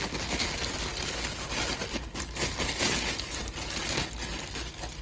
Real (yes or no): yes